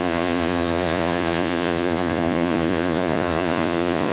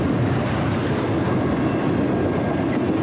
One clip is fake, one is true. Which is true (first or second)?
second